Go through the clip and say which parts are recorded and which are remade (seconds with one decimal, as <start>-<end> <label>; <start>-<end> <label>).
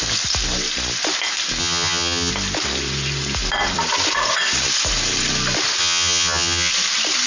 0.0-1.6 recorded; 1.6-2.3 remade; 2.3-5.8 recorded; 5.8-6.7 remade; 6.7-7.3 recorded